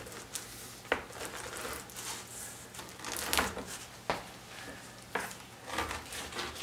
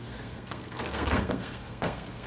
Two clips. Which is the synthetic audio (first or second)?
second